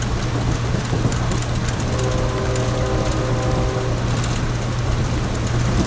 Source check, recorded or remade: recorded